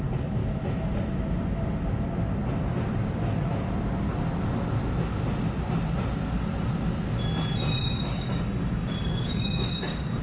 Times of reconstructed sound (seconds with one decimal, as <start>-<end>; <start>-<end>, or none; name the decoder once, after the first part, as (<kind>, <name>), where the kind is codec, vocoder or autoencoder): 7.8-10.2 (codec, DAC)

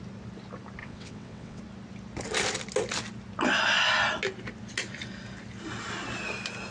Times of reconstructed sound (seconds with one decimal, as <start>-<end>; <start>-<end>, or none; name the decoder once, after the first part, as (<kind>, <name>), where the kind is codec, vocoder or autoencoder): 0.8-1.6 (vocoder, WaveNeXt)

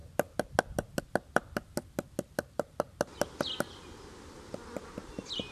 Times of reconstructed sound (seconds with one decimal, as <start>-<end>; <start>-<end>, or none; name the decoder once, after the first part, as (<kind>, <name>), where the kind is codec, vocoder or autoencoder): none

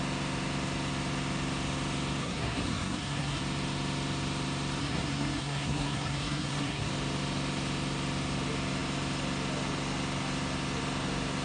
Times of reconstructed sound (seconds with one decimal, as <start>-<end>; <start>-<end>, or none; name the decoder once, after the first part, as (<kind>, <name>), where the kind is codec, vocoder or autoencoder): 2.2-3.4 (codec, SNAC); 4.8-6.9

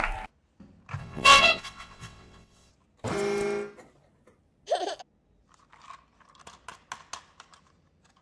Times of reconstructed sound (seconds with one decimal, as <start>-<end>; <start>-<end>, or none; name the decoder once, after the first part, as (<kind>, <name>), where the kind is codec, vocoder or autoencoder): 1.0-2.7 (vocoder, WaveNeXt)

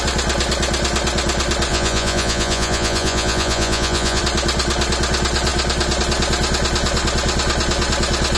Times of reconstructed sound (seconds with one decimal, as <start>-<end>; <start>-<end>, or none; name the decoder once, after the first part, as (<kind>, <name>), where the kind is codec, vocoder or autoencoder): 1.7-4.2 (vocoder, Vocos)

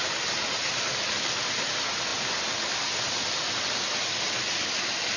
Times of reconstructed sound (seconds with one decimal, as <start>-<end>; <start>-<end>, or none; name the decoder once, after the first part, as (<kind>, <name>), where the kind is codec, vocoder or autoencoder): none